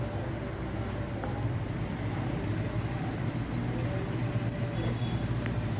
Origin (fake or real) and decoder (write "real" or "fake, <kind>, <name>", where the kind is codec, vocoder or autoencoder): real